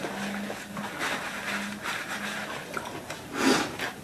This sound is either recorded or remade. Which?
recorded